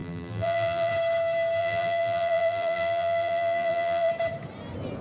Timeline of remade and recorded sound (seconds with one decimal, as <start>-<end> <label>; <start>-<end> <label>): 0.0-0.9 remade; 0.9-1.6 recorded; 1.6-4.1 remade; 4.1-5.0 recorded